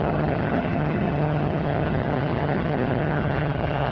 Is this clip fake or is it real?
fake